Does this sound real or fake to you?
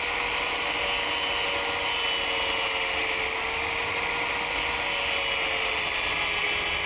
real